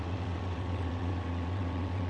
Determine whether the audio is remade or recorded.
remade